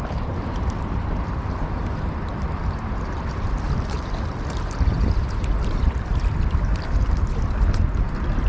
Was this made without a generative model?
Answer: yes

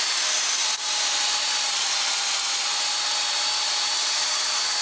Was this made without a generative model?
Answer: yes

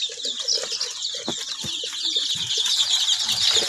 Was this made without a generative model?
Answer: yes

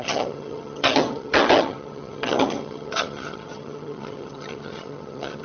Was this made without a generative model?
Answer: no